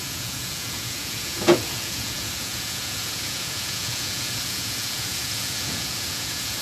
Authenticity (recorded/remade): remade